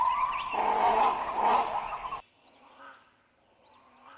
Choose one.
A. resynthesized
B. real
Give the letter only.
B